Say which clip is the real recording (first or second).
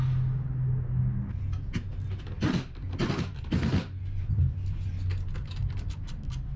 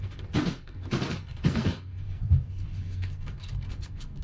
first